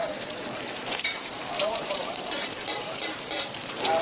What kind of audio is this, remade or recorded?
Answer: remade